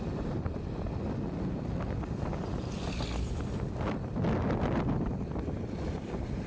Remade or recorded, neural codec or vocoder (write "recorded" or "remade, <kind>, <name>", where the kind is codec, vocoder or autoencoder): recorded